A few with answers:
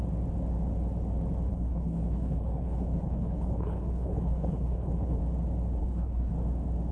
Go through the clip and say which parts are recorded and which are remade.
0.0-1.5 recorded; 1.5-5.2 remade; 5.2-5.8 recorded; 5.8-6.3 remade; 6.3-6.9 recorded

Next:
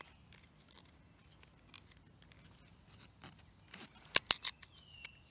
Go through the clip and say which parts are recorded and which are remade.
0.0-5.3 recorded

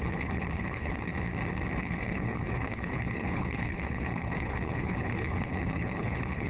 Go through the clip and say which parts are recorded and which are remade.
0.0-1.1 remade; 1.1-1.8 recorded; 1.8-6.5 remade

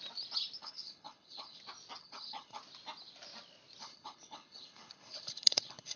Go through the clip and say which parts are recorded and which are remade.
0.0-0.6 recorded; 0.6-1.6 remade; 1.6-2.0 recorded; 2.0-2.6 remade; 2.6-3.8 recorded; 3.8-6.0 remade

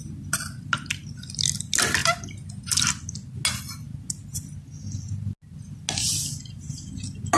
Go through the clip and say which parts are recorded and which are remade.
0.0-7.4 recorded

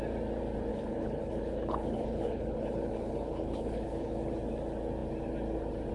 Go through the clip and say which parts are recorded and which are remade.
0.0-0.7 recorded; 0.7-4.2 remade; 4.2-5.9 recorded

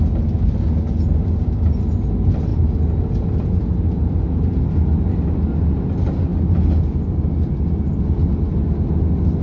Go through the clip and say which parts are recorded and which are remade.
0.0-9.4 recorded